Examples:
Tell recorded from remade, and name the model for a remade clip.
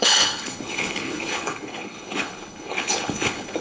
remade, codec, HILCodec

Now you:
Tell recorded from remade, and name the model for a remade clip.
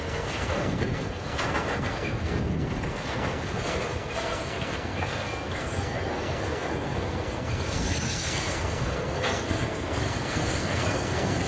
remade, codec, SNAC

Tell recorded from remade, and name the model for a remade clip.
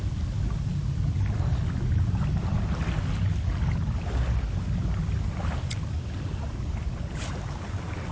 recorded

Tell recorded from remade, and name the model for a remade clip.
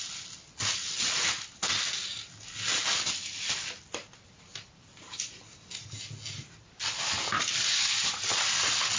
recorded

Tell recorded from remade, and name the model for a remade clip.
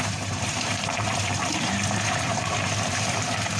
remade, vocoder, BigVGAN v2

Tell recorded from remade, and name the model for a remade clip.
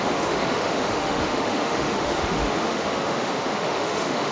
remade, autoencoder, DAC-VAE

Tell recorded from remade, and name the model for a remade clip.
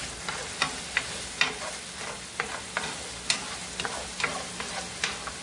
recorded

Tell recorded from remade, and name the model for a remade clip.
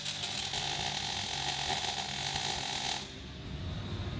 recorded